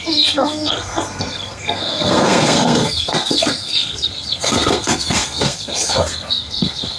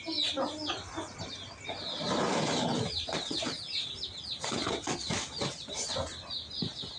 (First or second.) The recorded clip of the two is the second